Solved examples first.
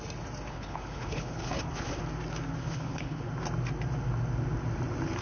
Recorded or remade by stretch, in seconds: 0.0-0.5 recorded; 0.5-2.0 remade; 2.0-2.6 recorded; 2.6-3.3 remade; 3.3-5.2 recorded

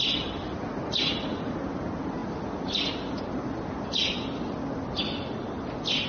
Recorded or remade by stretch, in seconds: 0.0-6.1 recorded

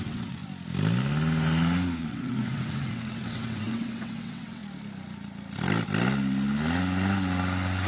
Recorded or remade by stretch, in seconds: 0.0-0.4 remade; 0.4-2.0 recorded; 2.0-4.6 remade; 4.6-7.9 recorded

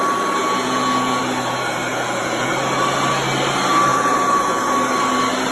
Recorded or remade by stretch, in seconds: 0.0-0.4 recorded; 0.4-1.2 remade; 1.2-1.9 recorded; 1.9-2.5 remade; 2.5-3.9 recorded; 3.9-4.6 remade; 4.6-5.5 recorded

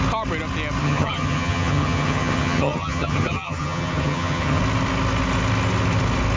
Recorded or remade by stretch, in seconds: 0.0-0.8 recorded; 0.8-4.6 remade; 4.6-6.4 recorded

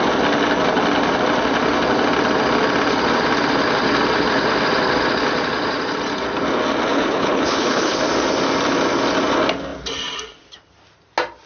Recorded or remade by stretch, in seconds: 0.0-6.9 recorded; 6.9-8.0 remade; 8.0-11.5 recorded